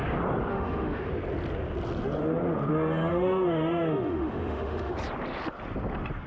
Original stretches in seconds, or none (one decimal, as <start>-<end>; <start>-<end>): 0.0-0.5; 1.1-3.1; 4.9-6.3